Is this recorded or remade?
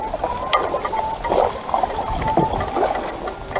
recorded